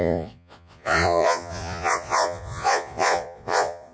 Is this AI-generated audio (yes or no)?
yes